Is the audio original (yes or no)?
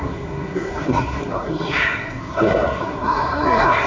no